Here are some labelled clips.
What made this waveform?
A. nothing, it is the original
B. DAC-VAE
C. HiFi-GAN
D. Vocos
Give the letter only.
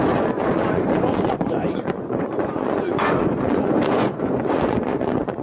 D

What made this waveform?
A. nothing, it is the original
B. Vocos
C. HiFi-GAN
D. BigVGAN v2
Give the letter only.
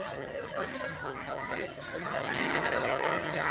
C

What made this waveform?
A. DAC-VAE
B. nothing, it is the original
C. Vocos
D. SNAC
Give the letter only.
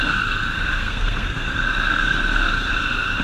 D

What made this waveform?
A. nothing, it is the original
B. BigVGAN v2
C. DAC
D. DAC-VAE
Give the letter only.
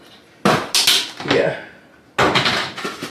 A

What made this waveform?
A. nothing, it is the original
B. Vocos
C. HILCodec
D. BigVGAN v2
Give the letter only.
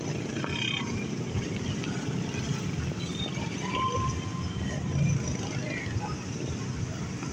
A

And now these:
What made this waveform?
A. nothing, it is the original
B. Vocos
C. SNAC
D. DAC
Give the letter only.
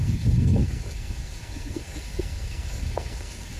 C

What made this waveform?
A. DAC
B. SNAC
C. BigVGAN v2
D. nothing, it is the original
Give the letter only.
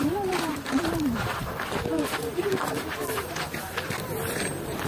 C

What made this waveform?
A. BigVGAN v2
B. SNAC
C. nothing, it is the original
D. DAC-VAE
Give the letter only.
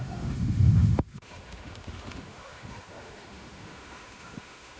D